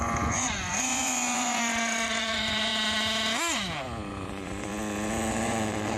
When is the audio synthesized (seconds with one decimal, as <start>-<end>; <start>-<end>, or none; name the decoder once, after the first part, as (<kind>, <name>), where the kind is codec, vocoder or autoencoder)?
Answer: 0.0-2.7 (vocoder, Vocos); 4.1-4.7; 5.3-6.0